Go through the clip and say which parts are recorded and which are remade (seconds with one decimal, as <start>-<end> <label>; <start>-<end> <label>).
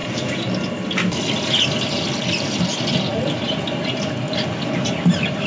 0.0-0.6 remade; 0.6-3.1 recorded; 3.1-3.6 remade; 3.6-5.5 recorded